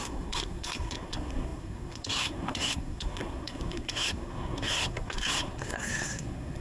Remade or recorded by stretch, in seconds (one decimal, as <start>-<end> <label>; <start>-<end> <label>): 0.0-6.6 remade